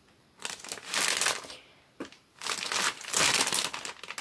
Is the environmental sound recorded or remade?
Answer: recorded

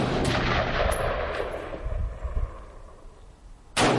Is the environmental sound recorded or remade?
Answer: recorded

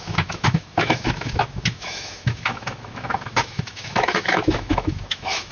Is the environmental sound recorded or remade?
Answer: remade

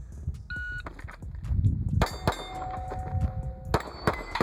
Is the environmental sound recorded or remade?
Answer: recorded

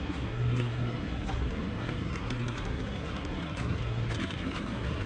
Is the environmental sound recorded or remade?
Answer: remade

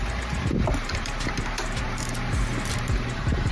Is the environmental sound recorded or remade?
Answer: remade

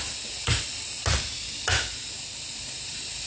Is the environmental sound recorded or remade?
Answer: recorded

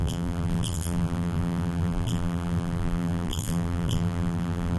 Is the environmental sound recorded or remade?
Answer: remade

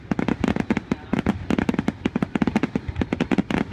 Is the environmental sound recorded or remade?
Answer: recorded